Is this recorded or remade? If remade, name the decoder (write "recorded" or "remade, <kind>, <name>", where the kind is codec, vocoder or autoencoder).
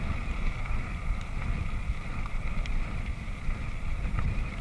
recorded